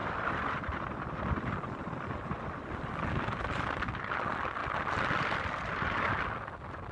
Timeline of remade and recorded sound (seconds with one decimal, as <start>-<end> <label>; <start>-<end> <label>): 0.0-6.9 recorded